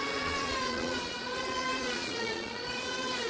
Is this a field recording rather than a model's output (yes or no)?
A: no